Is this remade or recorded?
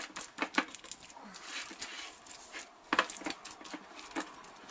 recorded